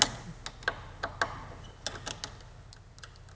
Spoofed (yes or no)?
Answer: no